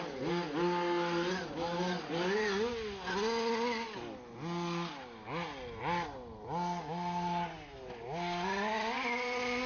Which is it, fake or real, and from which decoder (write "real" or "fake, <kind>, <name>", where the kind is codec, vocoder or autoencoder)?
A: real